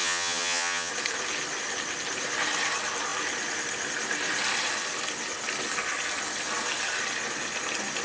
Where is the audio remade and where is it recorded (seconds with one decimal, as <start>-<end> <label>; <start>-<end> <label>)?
0.0-0.9 remade; 0.9-8.0 recorded